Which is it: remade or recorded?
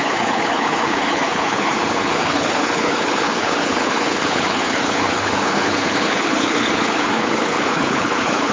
remade